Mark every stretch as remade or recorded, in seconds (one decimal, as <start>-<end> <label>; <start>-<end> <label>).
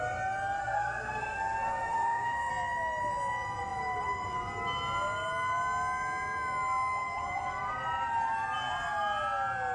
0.0-0.6 recorded; 0.6-2.5 remade; 2.5-9.7 recorded